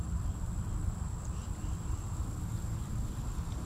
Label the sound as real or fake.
real